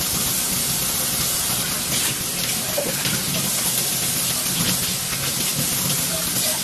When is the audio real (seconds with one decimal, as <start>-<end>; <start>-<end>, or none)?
0.0-2.4; 3.5-6.6